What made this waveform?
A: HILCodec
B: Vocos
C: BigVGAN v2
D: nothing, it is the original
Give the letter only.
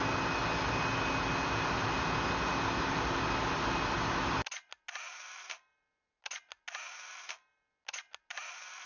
D